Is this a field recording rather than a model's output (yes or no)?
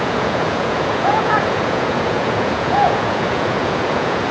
no